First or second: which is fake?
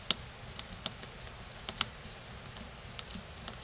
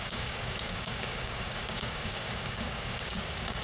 second